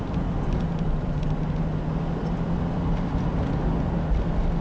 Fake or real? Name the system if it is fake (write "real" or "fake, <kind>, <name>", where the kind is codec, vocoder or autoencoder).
real